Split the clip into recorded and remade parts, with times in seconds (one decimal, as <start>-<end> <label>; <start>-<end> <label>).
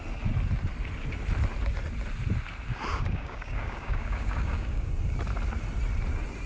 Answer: 0.0-2.9 recorded; 2.9-4.9 remade; 4.9-6.5 recorded